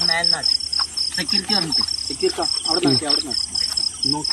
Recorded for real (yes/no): yes